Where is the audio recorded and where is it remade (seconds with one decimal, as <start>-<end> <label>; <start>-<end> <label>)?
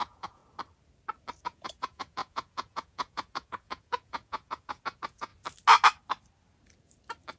0.0-0.4 remade; 0.4-1.4 recorded; 1.4-5.3 remade; 5.3-7.4 recorded